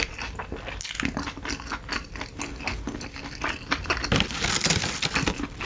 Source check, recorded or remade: recorded